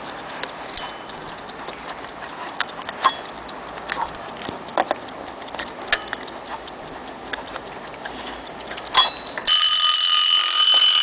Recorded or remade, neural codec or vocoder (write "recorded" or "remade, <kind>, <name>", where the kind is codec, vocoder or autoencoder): recorded